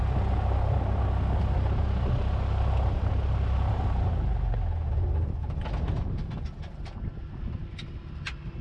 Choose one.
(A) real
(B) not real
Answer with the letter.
A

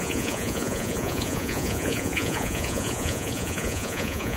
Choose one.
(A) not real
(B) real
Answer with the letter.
A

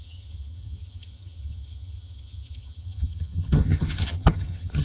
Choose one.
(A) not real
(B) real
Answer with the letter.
A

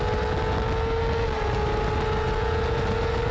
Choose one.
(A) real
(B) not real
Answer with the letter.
A